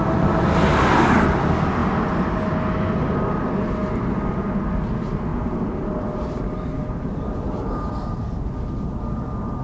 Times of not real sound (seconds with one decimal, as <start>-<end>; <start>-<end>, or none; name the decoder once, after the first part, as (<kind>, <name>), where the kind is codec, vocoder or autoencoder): 5.3-7.9 (vocoder, BigVGAN v2)